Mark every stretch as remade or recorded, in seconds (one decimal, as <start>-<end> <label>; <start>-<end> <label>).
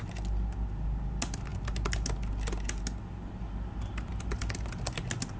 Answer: 0.0-5.4 recorded